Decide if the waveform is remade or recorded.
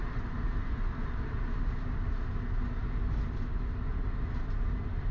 recorded